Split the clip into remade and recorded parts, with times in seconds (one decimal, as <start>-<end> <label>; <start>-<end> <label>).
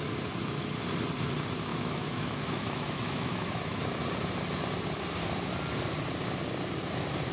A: 0.0-1.7 recorded; 1.7-3.8 remade; 3.8-7.3 recorded